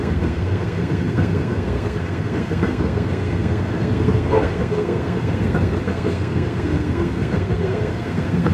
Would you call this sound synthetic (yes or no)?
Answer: yes